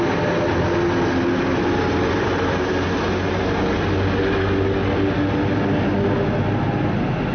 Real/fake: real